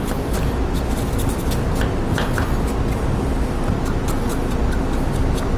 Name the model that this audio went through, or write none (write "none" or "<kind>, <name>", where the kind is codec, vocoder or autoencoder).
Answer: none